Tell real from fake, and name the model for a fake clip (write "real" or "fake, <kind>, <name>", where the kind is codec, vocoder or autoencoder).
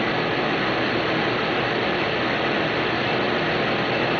real